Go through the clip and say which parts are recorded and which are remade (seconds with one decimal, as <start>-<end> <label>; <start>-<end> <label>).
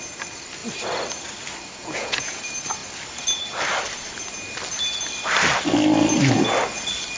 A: 0.0-1.8 recorded; 1.8-2.4 remade; 2.4-7.2 recorded